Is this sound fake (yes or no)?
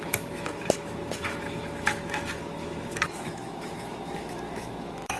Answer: yes